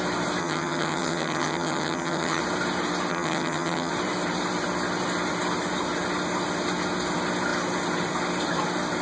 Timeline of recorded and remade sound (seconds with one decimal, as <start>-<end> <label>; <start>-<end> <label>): 0.0-0.4 recorded; 0.4-2.4 remade; 2.4-3.1 recorded; 3.1-3.9 remade; 3.9-9.0 recorded